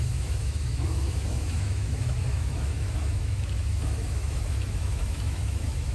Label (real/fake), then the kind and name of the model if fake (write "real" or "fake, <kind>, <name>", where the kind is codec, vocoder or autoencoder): fake, autoencoder, DAC-VAE